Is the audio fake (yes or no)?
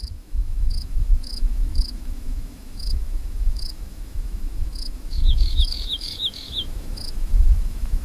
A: yes